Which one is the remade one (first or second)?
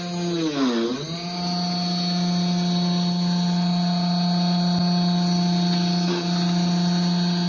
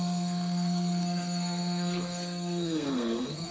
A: second